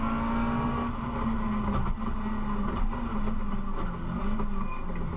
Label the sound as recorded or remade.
recorded